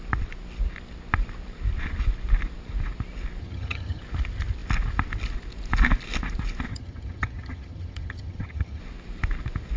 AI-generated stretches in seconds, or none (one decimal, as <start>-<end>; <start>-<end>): 3.4-4.0; 6.7-8.8